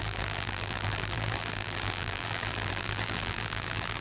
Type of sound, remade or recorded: remade